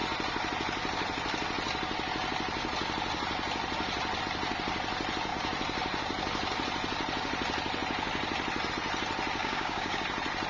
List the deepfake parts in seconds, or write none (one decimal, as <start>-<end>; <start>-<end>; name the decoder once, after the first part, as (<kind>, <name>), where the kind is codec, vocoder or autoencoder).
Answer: 9.4-10.0 (codec, DAC)